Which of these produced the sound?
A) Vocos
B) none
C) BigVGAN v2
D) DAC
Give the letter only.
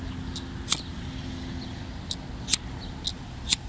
B